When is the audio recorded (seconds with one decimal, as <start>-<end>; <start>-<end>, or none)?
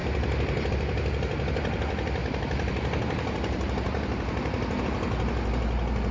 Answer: 0.0-6.1